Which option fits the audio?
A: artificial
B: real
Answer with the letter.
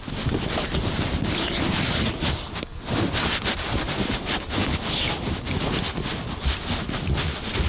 B